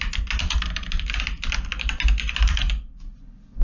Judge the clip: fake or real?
real